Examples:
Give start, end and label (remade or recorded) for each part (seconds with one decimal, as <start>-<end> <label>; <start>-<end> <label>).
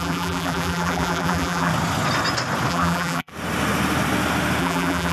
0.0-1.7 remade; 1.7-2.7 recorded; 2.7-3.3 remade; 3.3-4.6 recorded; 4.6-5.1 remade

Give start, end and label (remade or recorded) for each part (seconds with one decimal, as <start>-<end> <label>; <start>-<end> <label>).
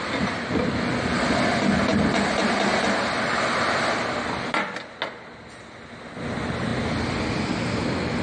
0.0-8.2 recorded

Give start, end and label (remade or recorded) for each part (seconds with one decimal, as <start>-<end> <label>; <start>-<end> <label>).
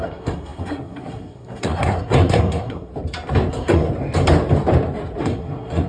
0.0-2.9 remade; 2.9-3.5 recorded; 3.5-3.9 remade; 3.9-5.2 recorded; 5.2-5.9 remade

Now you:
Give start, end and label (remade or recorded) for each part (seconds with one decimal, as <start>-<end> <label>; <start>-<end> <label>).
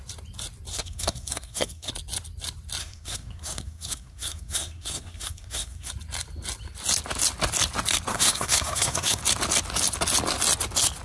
0.0-0.7 recorded; 0.7-1.9 remade; 1.9-2.8 recorded; 2.8-5.9 remade; 5.9-8.1 recorded; 8.1-9.2 remade; 9.2-11.0 recorded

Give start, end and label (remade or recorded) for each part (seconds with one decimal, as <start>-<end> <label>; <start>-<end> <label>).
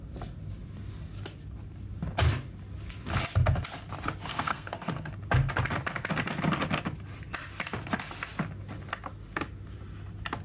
0.0-4.3 recorded; 4.3-5.1 remade; 5.1-10.4 recorded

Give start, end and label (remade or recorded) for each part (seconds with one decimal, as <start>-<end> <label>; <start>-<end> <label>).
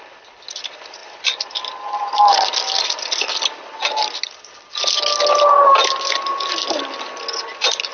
0.0-7.9 recorded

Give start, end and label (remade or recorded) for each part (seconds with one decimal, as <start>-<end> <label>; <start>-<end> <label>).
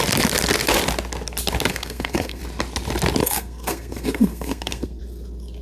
0.0-1.7 recorded; 1.7-2.4 remade; 2.4-3.2 recorded; 3.2-5.0 remade; 5.0-5.6 recorded